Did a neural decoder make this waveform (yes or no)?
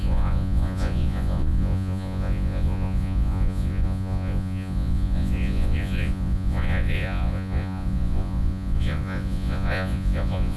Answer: yes